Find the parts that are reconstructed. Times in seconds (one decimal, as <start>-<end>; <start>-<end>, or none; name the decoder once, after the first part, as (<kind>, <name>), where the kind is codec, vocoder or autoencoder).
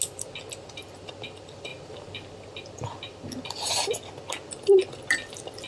none